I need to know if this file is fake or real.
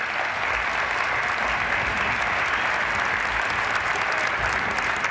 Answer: real